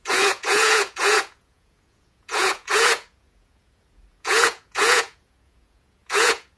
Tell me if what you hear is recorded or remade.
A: remade